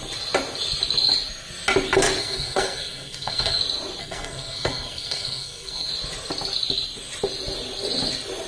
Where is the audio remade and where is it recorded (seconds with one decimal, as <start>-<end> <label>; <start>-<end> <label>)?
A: 0.0-2.2 recorded; 2.2-3.6 remade; 3.6-4.0 recorded; 4.0-5.9 remade; 5.9-8.5 recorded